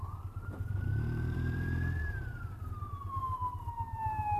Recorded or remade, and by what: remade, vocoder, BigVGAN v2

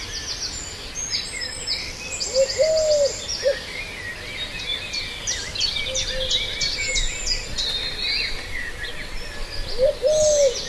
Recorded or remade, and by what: recorded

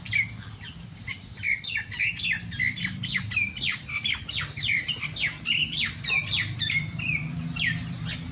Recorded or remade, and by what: remade, vocoder, BigVGAN v2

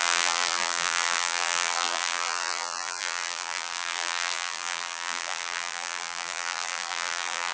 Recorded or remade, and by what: remade, vocoder, BigVGAN v2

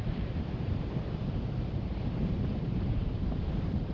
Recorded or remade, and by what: remade, vocoder, BigVGAN v2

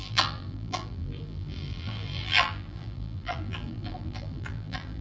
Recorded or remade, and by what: remade, vocoder, BigVGAN v2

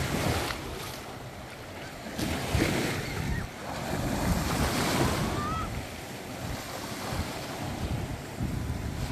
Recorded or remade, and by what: remade, vocoder, BigVGAN v2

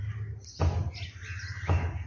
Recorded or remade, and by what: recorded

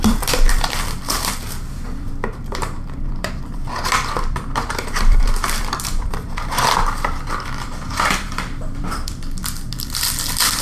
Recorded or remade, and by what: remade, vocoder, BigVGAN v2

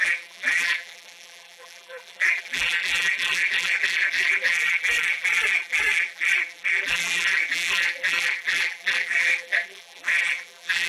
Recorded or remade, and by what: remade, vocoder, BigVGAN v2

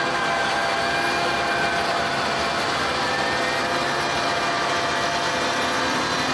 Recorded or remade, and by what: recorded